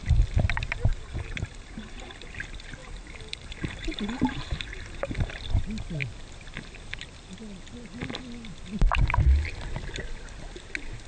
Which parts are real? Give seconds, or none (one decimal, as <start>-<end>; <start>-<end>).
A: 0.0-0.9; 2.3-2.8; 5.3-11.1